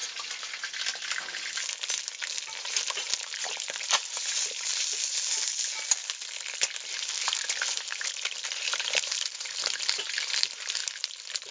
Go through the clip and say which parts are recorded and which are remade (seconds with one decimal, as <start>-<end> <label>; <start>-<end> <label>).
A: 0.0-2.6 recorded; 2.6-4.7 remade; 4.7-7.1 recorded; 7.1-11.5 remade